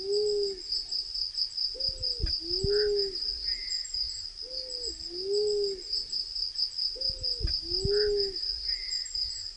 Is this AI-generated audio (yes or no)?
no